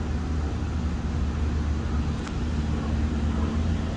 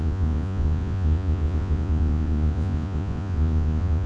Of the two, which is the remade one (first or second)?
second